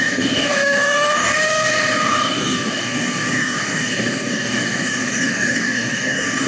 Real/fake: fake